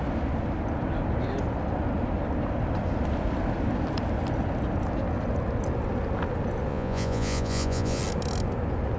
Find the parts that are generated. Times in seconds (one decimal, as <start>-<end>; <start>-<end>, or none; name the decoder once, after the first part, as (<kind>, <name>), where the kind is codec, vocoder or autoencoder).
6.7-8.0 (vocoder, Vocos)